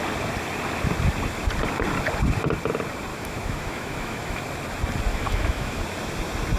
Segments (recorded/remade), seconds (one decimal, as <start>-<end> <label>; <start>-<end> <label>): 0.0-3.1 recorded; 3.1-4.4 remade; 4.4-5.1 recorded; 5.1-5.8 remade; 5.8-6.6 recorded